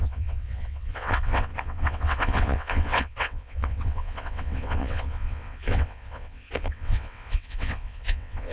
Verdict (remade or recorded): remade